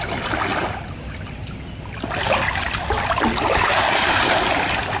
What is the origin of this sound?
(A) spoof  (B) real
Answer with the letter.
B